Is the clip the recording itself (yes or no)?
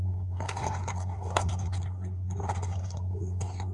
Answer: no